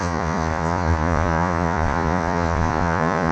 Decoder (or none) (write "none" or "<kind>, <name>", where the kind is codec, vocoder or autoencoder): vocoder, Vocos